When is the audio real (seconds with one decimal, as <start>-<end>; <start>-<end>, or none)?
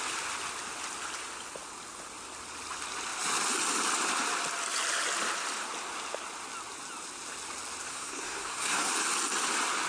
0.0-7.9; 8.9-9.9